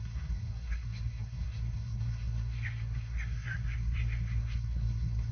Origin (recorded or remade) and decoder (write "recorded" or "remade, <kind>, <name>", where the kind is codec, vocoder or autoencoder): remade, codec, SNAC